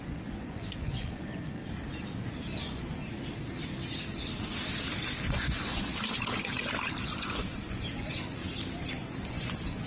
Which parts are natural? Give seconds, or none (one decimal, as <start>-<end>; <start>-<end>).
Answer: 1.6-2.4; 3.0-5.2; 5.9-7.0; 8.4-8.9